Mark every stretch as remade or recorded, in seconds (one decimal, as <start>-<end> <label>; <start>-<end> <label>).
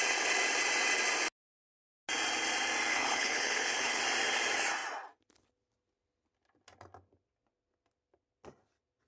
0.0-2.9 recorded; 2.9-4.0 remade; 4.0-9.1 recorded